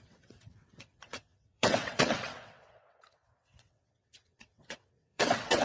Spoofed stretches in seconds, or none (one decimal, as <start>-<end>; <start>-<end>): 0.0-5.6